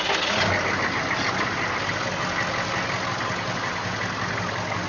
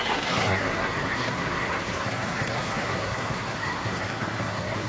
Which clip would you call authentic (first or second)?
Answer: first